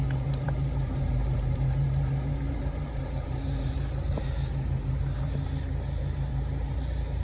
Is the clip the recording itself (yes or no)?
no